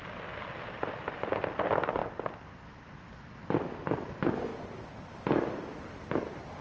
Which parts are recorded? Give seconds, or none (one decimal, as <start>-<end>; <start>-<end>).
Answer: 0.0-6.6